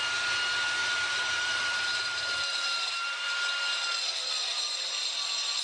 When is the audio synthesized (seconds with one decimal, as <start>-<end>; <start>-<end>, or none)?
0.8-3.3; 4.5-5.0